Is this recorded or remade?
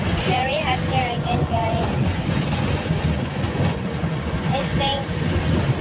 remade